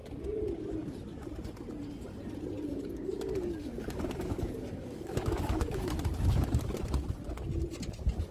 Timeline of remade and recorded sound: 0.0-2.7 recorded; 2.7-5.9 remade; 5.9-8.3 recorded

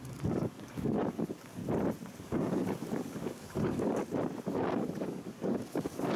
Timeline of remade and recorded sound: 0.0-1.6 remade; 1.6-2.2 recorded; 2.2-4.0 remade; 4.0-4.5 recorded; 4.5-6.2 remade

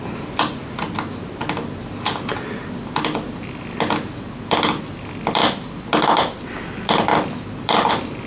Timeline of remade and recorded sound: 0.0-8.3 recorded